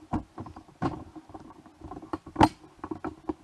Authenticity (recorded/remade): recorded